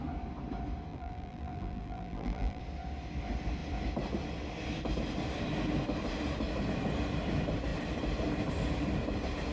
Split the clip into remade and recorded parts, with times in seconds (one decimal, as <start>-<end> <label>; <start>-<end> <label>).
0.0-0.9 recorded; 0.9-2.6 remade; 2.6-9.5 recorded